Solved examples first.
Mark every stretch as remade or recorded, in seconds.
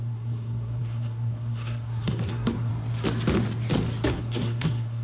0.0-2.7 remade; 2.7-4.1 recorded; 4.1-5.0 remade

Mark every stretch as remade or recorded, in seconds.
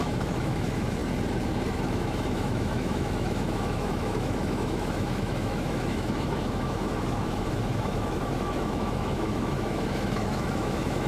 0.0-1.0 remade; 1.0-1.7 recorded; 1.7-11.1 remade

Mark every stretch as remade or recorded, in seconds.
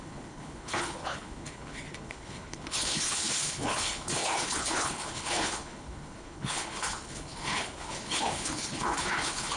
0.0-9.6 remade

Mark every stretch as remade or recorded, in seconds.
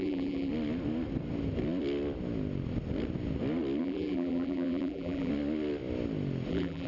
0.0-0.5 remade; 0.5-3.8 recorded; 3.8-5.3 remade; 5.3-6.5 recorded; 6.5-6.9 remade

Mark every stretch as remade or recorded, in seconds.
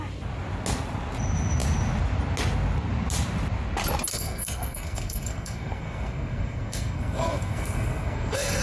0.0-4.1 recorded; 4.1-8.6 remade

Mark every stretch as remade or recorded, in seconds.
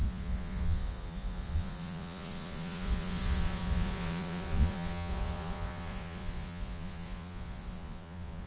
0.0-8.5 remade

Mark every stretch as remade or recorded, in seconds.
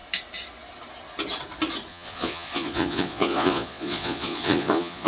0.0-1.9 recorded; 1.9-5.1 remade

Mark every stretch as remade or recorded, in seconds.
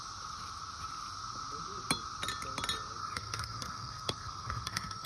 0.0-3.0 recorded; 3.0-5.1 remade